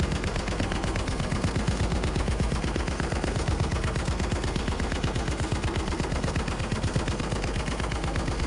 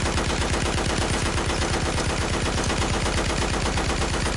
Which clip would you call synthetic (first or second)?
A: first